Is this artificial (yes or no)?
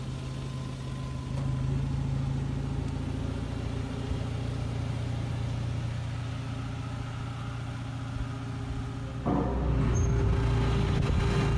no